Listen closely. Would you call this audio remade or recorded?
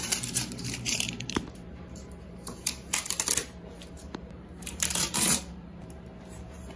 remade